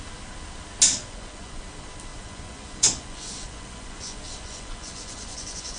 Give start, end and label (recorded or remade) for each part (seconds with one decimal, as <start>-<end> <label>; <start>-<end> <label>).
0.0-1.0 recorded; 1.0-1.6 remade; 1.6-2.1 recorded; 2.1-5.8 remade